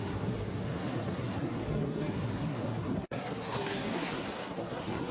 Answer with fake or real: fake